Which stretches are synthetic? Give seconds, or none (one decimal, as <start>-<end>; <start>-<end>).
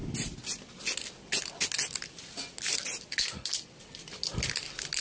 none